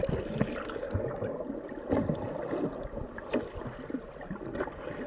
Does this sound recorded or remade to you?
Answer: recorded